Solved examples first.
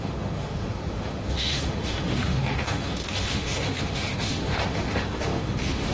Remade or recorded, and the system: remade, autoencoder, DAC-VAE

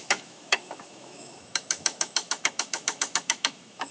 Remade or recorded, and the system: remade, autoencoder, DAC-VAE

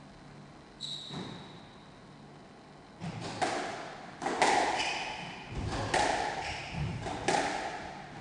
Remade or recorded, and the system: recorded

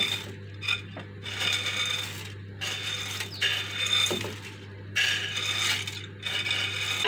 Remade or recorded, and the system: recorded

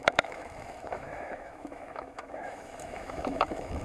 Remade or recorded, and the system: remade, autoencoder, DAC-VAE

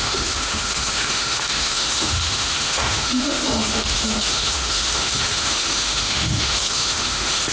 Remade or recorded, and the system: remade, autoencoder, DAC-VAE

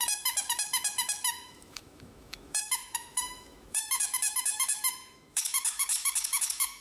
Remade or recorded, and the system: remade, autoencoder, DAC-VAE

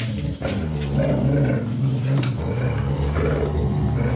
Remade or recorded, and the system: recorded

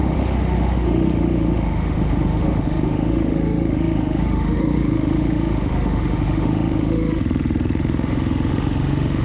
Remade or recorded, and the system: remade, autoencoder, DAC-VAE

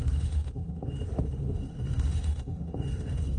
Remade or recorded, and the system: remade, autoencoder, DAC-VAE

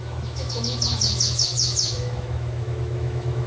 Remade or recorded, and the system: remade, autoencoder, DAC-VAE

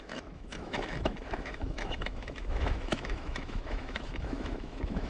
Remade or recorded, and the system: remade, autoencoder, DAC-VAE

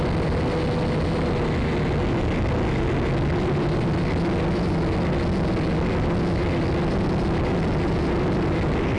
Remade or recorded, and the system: recorded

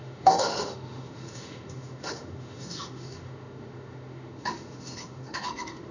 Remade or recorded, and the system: remade, autoencoder, DAC-VAE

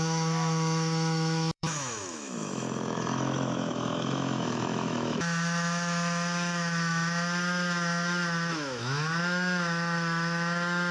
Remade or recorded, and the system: remade, autoencoder, DAC-VAE